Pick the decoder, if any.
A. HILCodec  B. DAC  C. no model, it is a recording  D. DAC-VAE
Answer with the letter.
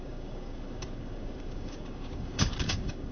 B